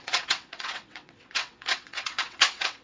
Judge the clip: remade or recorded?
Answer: remade